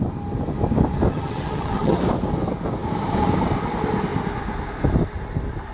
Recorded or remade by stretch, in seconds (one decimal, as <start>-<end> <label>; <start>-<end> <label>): 0.0-1.1 recorded; 1.1-2.0 remade; 2.0-5.7 recorded